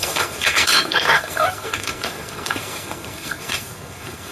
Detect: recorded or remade remade